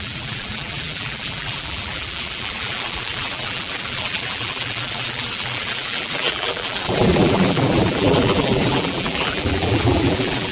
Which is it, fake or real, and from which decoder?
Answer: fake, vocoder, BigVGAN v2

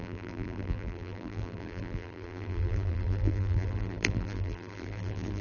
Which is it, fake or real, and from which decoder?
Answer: fake, vocoder, BigVGAN v2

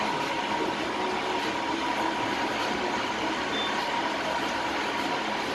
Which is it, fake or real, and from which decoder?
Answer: real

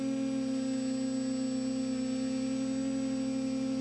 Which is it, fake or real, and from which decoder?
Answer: real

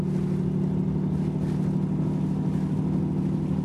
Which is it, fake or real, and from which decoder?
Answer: real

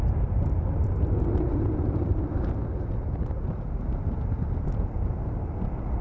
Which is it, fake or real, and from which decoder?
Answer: real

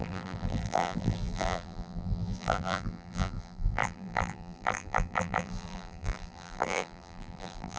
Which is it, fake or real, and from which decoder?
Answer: fake, vocoder, BigVGAN v2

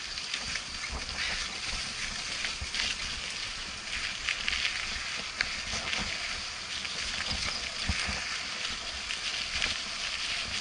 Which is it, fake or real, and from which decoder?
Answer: real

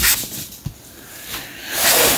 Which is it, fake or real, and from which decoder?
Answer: real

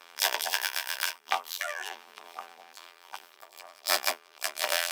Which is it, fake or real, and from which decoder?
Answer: fake, vocoder, BigVGAN v2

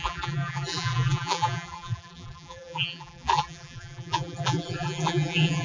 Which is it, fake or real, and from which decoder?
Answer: fake, vocoder, BigVGAN v2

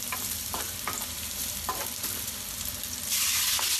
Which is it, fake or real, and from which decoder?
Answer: real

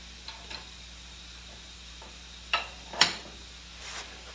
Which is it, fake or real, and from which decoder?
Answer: fake, vocoder, BigVGAN v2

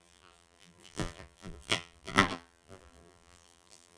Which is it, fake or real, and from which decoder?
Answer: fake, vocoder, BigVGAN v2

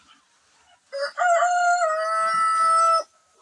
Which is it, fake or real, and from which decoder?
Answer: real